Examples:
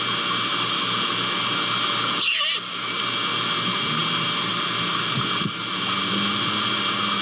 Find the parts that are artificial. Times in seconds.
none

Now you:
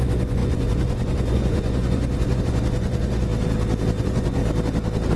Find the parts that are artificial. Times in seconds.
0.0-3.3; 4.0-4.4

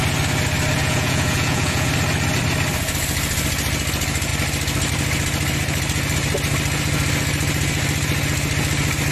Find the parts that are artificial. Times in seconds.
0.8-1.9

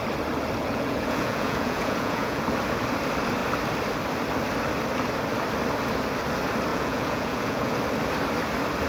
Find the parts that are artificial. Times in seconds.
0.6-2.4; 6.7-7.7

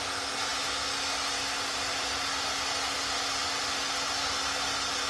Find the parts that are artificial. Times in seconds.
none

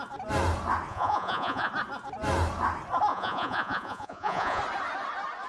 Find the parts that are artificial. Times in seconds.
0.9-1.7; 3.1-4.6

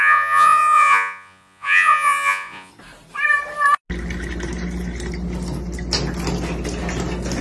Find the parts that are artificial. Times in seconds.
0.0-2.7

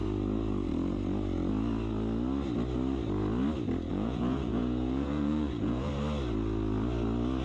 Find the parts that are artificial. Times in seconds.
3.9-5.9